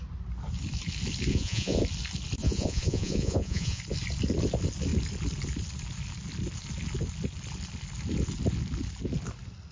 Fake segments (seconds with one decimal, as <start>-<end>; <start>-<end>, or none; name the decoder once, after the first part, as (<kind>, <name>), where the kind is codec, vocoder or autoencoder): 1.3-1.8 (vocoder, Vocos); 2.4-3.8